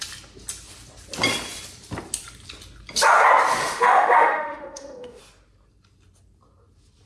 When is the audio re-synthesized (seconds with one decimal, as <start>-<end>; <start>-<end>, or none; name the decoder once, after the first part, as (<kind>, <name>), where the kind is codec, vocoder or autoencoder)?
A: 3.6-5.2 (autoencoder, DAC-VAE)